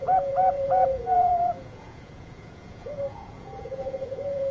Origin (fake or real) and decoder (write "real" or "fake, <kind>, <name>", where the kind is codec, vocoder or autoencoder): fake, vocoder, Vocos